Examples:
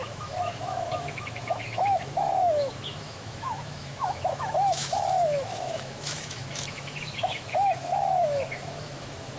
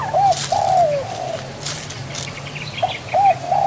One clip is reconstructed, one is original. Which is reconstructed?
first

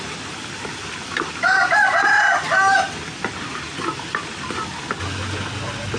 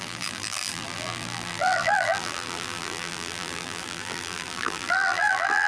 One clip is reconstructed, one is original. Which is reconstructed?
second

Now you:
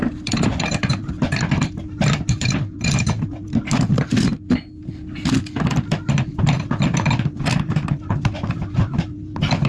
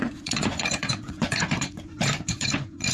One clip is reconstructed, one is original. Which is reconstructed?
second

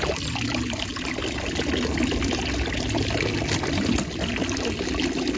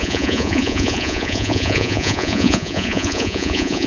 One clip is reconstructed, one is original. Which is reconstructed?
second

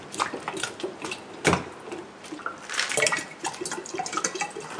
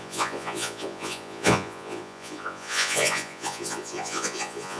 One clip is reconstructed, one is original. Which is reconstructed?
second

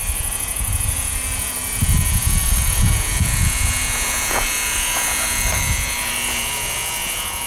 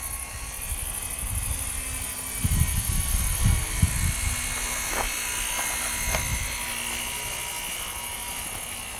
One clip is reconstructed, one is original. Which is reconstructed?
first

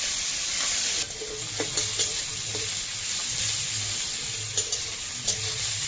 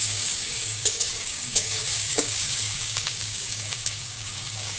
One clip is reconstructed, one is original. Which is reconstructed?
second